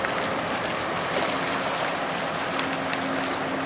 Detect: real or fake real